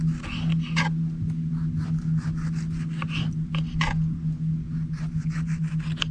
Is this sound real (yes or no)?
yes